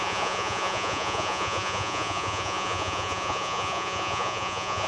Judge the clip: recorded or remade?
remade